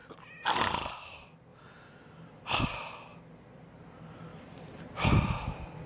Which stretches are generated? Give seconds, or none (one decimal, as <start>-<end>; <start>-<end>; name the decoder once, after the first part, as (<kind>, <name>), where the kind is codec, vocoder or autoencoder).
1.5-2.6 (vocoder, BigVGAN v2); 4.3-4.9

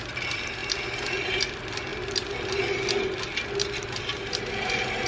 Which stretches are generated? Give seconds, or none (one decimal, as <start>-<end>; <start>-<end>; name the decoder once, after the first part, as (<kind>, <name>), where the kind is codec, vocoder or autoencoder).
4.1-5.1 (vocoder, BigVGAN v2)

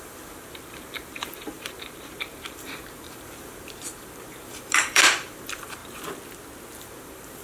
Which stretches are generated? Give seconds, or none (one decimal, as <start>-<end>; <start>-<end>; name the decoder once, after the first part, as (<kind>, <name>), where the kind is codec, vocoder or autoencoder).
0.0-5.8 (vocoder, BigVGAN v2); 6.8-7.4

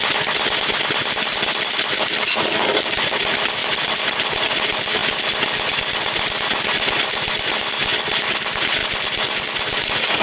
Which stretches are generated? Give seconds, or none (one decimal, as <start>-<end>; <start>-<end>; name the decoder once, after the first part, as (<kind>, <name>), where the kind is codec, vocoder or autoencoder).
3.6-4.5 (vocoder, BigVGAN v2)

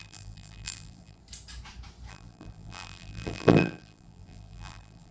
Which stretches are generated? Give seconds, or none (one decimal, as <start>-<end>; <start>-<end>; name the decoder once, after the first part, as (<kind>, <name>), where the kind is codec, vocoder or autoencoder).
0.0-1.2 (vocoder, BigVGAN v2); 2.1-5.1